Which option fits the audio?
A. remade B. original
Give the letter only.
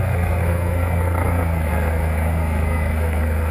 A